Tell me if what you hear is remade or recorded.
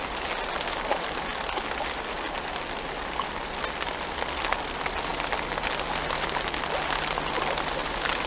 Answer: recorded